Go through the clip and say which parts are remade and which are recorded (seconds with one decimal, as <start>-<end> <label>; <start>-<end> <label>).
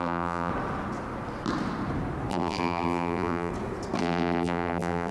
0.0-0.5 remade; 0.5-2.3 recorded; 2.3-3.5 remade; 3.5-4.0 recorded; 4.0-5.1 remade